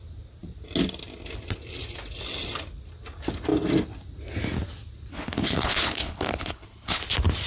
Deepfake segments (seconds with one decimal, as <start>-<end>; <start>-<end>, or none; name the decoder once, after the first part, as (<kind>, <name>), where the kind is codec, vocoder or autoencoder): 5.1-7.0 (codec, HILCodec)